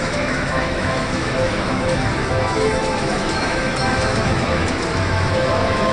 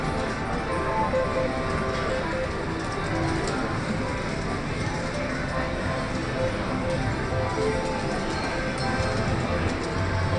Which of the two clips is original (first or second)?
second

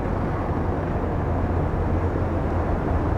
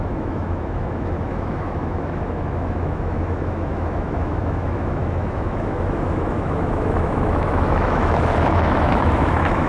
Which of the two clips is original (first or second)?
first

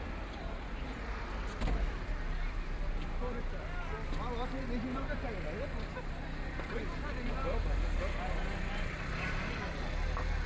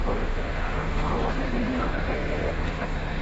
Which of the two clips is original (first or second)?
first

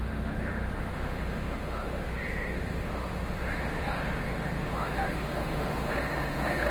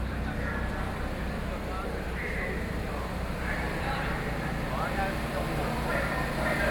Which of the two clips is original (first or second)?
second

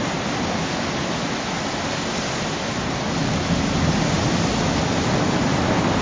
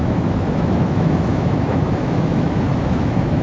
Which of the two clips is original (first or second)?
first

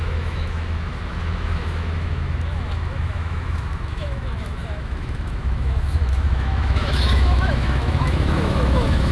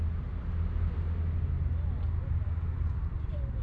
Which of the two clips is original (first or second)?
second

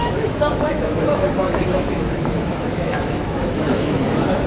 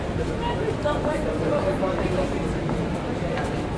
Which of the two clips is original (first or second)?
second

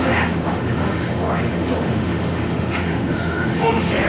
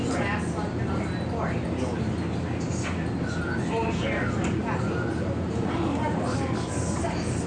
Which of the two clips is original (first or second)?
second